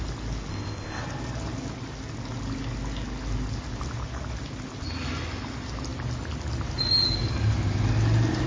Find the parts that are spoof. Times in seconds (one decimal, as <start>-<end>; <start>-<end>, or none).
0.5-1.0